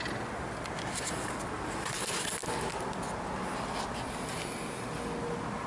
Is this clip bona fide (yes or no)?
yes